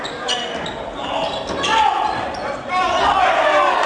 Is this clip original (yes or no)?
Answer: no